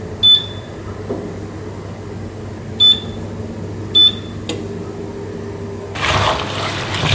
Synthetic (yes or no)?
no